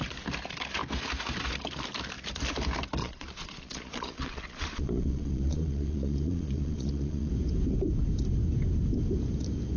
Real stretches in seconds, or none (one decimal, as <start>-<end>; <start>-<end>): 0.0-3.0; 7.3-9.8